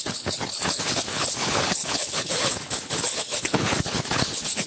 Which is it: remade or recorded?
remade